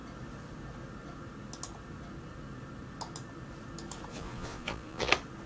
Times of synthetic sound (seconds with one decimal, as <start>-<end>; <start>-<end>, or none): 4.1-5.1

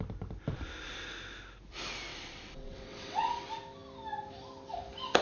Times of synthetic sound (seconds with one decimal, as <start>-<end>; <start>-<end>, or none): 2.1-3.3

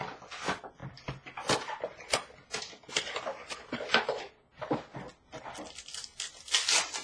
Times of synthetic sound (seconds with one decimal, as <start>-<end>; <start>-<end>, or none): none

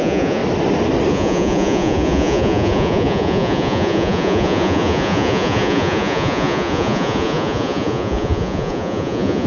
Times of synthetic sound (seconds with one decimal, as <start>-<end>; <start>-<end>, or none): 0.0-0.4; 1.1-9.5

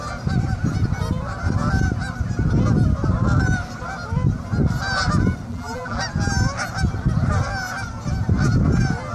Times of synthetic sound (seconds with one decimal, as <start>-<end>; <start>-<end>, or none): 5.5-6.0